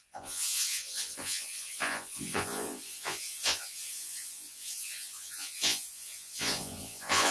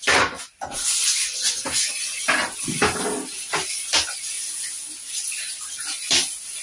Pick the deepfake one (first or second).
first